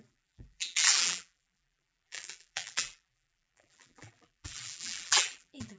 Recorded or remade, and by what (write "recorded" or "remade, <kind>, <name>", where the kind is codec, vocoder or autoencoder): remade, vocoder, BigVGAN v2